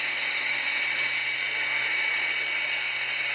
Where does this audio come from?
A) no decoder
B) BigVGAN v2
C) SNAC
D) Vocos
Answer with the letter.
A